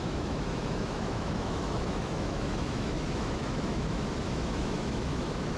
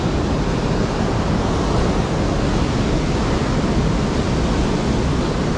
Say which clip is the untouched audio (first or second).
second